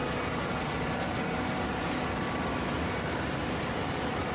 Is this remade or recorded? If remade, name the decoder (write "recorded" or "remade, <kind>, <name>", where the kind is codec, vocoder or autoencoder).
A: recorded